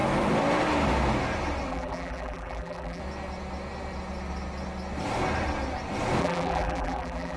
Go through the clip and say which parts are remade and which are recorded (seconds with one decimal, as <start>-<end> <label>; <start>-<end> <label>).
0.0-1.7 recorded; 1.7-3.0 remade; 3.0-6.2 recorded; 6.2-7.4 remade